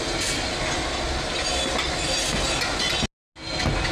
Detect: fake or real real